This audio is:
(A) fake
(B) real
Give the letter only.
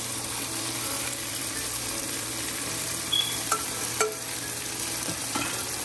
A